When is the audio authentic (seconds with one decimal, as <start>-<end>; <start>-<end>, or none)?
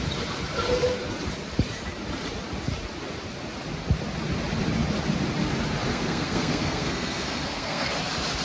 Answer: 0.0-5.9; 7.9-8.4